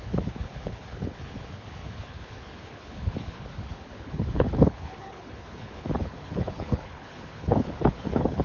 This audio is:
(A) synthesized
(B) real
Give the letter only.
A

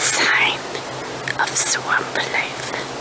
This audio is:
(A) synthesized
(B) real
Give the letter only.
B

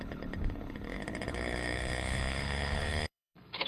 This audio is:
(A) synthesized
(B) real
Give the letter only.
A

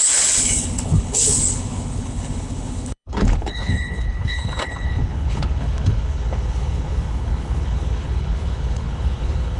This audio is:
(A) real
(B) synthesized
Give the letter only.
B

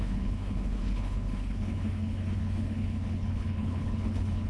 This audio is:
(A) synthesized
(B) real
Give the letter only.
A